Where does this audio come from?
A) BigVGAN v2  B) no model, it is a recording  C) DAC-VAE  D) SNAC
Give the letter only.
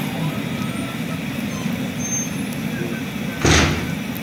B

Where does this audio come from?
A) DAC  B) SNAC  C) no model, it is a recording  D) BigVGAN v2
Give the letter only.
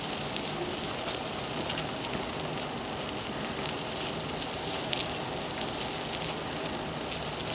C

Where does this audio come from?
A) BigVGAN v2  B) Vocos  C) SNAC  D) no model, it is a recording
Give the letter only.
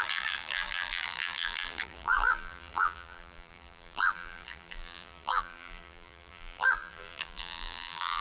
A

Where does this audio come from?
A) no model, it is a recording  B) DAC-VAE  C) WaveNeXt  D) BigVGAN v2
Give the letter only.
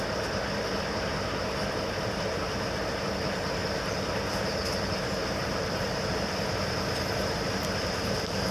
D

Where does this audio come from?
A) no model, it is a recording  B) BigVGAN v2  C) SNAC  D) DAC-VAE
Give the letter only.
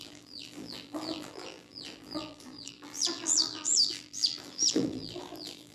B